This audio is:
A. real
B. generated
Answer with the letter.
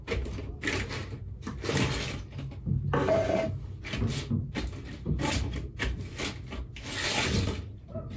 A